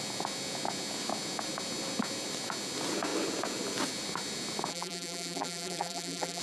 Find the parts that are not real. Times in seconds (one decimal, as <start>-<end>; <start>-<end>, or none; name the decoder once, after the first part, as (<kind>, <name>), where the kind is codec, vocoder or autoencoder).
4.7-6.4 (vocoder, BigVGAN v2)